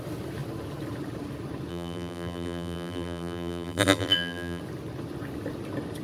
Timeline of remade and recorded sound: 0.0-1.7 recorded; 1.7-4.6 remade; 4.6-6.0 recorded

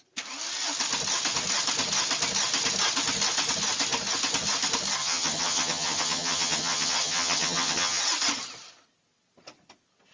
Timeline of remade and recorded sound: 0.0-5.0 recorded; 5.0-8.0 remade; 8.0-10.1 recorded

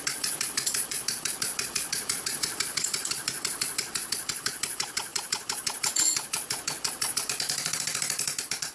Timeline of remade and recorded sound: 0.0-8.7 remade

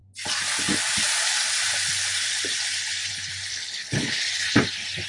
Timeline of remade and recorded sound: 0.0-3.5 recorded; 3.5-4.2 remade; 4.2-5.1 recorded

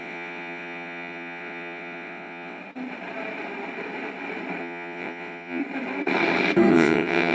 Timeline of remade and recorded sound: 0.0-2.6 remade; 2.6-4.6 recorded; 4.6-5.6 remade; 5.6-6.7 recorded; 6.7-7.3 remade

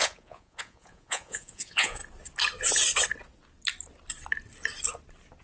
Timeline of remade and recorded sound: 0.0-2.0 remade; 2.0-5.4 recorded

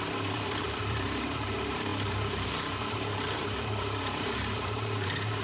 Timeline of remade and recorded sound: 0.0-5.4 remade

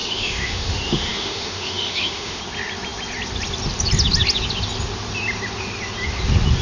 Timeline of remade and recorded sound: 0.0-2.4 remade; 2.4-6.6 recorded